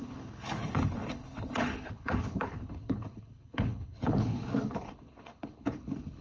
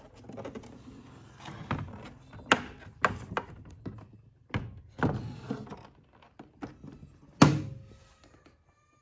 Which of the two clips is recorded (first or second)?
second